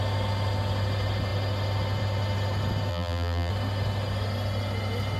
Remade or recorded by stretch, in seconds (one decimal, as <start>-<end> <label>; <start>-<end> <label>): 0.0-2.9 recorded; 2.9-3.5 remade; 3.5-5.2 recorded